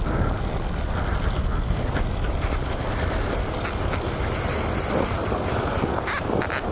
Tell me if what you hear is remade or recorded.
recorded